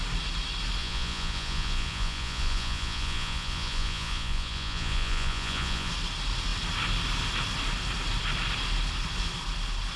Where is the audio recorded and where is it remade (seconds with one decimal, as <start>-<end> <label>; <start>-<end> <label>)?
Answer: 0.0-0.8 recorded; 0.8-5.9 remade; 5.9-10.0 recorded